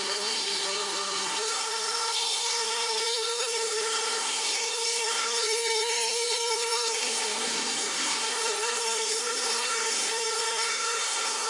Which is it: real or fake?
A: fake